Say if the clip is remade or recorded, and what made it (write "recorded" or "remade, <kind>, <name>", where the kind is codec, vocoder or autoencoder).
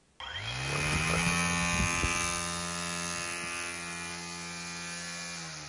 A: recorded